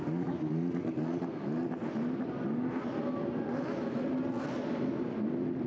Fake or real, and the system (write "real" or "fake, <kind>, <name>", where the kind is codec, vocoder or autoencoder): real